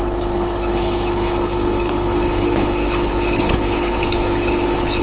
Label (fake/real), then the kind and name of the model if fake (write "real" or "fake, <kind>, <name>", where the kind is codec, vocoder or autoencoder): fake, codec, HILCodec